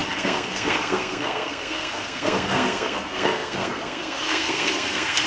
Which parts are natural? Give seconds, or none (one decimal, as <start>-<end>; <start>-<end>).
none